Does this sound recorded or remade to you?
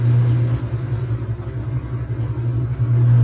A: recorded